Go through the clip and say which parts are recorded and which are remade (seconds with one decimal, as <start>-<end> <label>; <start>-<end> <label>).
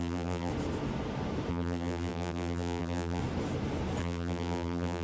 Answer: 0.0-0.5 remade; 0.5-1.5 recorded; 1.5-3.2 remade; 3.2-4.0 recorded; 4.0-5.0 remade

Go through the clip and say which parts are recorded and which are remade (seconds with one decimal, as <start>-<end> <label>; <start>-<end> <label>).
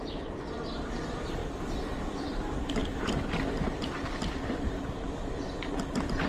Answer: 0.0-1.4 remade; 1.4-2.0 recorded; 2.0-2.8 remade; 2.8-6.3 recorded